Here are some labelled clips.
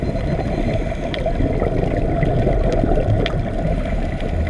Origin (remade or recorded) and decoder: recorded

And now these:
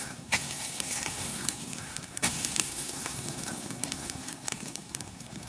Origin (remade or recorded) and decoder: remade, codec, SNAC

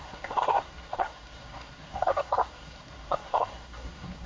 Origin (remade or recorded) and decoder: remade, codec, SNAC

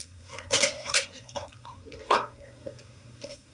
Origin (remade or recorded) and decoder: remade, codec, SNAC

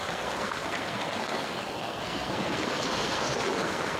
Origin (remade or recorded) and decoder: remade, codec, SNAC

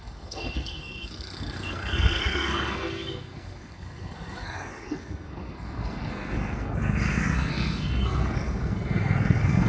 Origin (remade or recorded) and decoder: remade, codec, SNAC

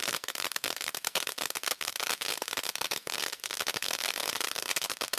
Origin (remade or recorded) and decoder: remade, codec, SNAC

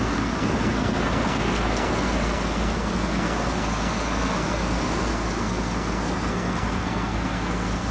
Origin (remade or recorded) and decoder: remade, codec, SNAC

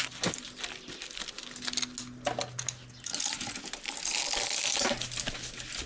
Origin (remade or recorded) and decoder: recorded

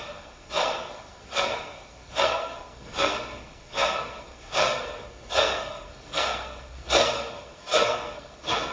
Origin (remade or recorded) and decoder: remade, codec, SNAC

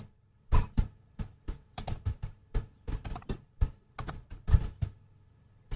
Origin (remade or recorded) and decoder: recorded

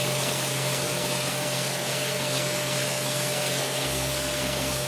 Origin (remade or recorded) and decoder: remade, codec, SNAC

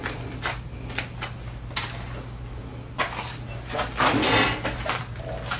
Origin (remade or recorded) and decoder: recorded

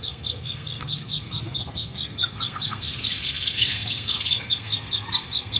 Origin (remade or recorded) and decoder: remade, codec, SNAC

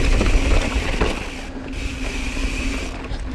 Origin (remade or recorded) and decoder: recorded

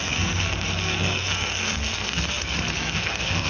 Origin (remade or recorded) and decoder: remade, codec, SNAC